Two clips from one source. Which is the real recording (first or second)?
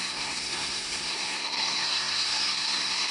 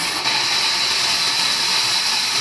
second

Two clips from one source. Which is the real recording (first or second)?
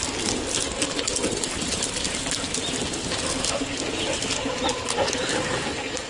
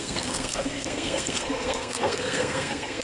first